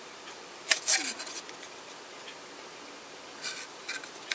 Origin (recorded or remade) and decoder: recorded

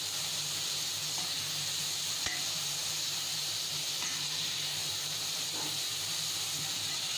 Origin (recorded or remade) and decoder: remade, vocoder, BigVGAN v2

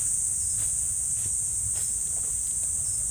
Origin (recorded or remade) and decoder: recorded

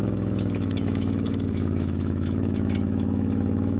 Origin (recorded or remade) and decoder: remade, autoencoder, DAC-VAE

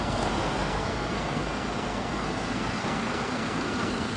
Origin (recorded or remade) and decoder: remade, codec, SNAC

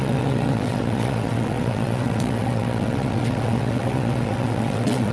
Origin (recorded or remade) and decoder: remade, vocoder, WaveNeXt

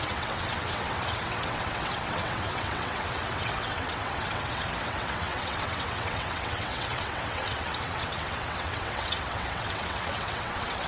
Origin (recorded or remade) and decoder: remade, vocoder, WaveNeXt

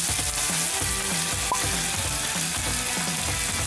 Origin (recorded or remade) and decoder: recorded